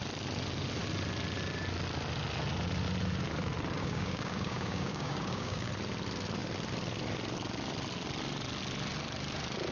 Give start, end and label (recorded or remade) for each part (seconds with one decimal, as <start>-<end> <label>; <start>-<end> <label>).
0.0-3.8 recorded; 3.8-5.7 remade; 5.7-9.7 recorded